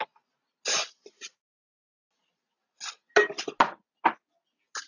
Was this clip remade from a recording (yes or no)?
no